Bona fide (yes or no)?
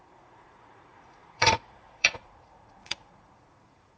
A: no